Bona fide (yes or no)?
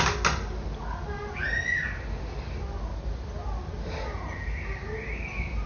yes